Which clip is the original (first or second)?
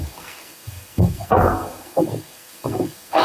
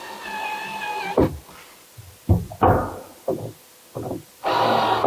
second